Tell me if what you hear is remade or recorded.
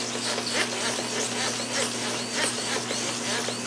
recorded